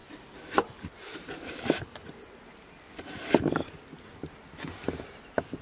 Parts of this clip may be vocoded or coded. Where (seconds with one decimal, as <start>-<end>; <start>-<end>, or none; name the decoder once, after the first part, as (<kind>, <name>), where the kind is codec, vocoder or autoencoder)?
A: none